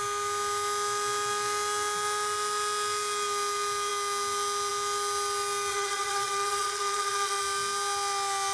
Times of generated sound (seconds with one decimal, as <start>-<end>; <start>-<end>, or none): 5.7-7.4